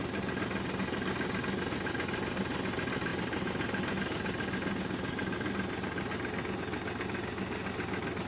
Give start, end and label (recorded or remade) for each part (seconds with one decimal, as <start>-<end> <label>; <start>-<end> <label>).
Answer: 0.0-8.3 recorded